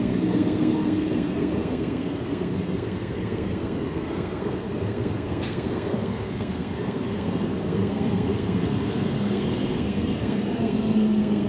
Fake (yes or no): yes